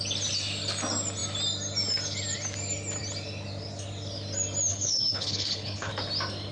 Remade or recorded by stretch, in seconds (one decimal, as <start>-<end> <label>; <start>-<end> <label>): 0.0-4.7 recorded; 4.7-5.9 remade; 5.9-6.5 recorded